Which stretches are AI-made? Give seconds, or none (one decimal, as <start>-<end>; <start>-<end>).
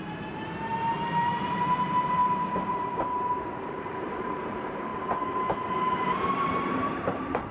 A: 0.0-0.7; 1.3-4.9; 6.3-7.5